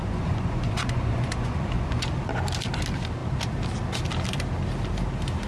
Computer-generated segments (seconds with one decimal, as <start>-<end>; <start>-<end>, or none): 0.0-2.1

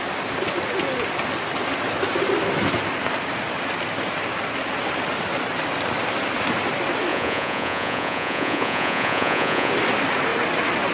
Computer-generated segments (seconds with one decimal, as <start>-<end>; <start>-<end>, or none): 7.1-9.7

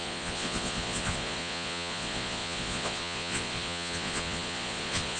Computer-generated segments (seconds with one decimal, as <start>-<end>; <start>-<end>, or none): 0.0-5.2

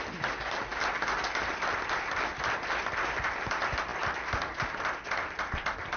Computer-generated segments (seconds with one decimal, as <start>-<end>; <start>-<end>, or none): none